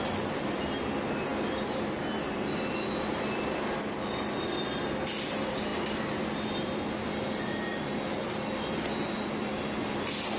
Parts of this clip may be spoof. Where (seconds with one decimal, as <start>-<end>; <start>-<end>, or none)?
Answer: none